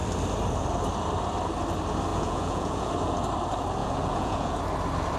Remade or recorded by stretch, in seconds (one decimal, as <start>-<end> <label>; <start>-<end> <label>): 0.0-2.1 recorded; 2.1-2.9 remade; 2.9-3.8 recorded; 3.8-4.6 remade; 4.6-5.2 recorded